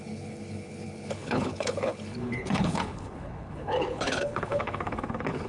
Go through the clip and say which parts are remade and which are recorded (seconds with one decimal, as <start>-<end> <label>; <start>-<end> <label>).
0.0-5.5 remade